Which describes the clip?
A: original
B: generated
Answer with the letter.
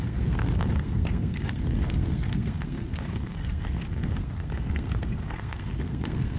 B